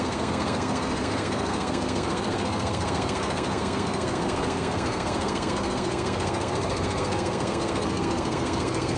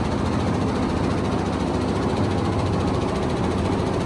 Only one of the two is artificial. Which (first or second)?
first